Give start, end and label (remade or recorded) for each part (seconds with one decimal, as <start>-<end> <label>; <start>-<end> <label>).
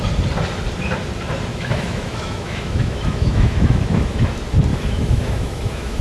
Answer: 0.0-1.5 recorded; 1.5-4.2 remade; 4.2-4.7 recorded; 4.7-6.0 remade